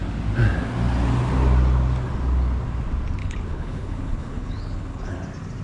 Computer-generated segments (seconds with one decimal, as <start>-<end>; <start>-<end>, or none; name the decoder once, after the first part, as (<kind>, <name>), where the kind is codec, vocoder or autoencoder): 3.2-5.1 (codec, HILCodec)